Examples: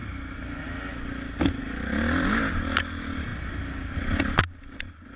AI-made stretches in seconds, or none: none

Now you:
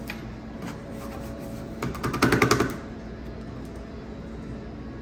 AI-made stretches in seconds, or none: 0.8-2.5

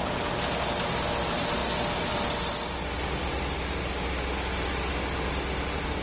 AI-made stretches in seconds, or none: none

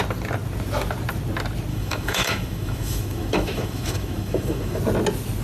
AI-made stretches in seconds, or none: 1.7-4.8

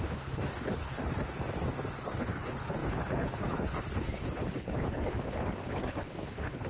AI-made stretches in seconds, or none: 0.0-1.0; 2.0-6.7

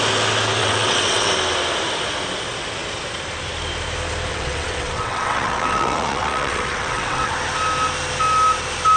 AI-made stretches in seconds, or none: 0.6-1.3; 4.3-7.3

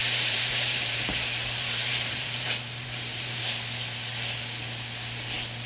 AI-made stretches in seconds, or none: 0.0-3.4